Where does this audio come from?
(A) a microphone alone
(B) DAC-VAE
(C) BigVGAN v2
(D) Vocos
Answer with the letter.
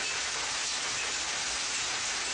A